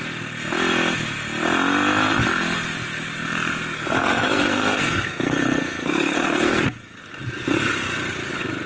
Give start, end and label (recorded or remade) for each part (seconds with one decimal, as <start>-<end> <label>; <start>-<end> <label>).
0.0-4.0 recorded; 4.0-6.6 remade; 6.6-8.7 recorded